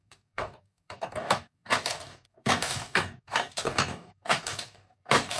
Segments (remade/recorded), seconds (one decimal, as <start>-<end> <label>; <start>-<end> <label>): 0.0-5.4 remade